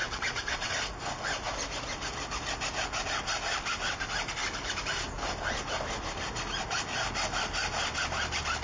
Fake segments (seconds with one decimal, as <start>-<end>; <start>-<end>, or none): 0.0-0.7